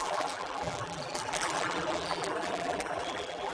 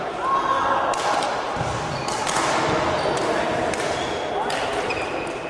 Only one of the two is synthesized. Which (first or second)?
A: first